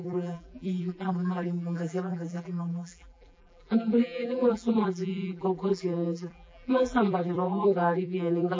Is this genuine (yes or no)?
no